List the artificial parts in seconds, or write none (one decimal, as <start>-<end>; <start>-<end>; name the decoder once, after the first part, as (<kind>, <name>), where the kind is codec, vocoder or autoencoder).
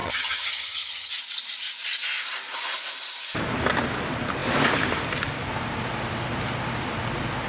0.0-1.1 (vocoder, HiFi-GAN)